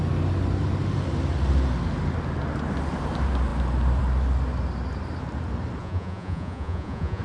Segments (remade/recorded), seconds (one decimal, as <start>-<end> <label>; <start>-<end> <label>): 0.0-5.8 recorded; 5.8-7.2 remade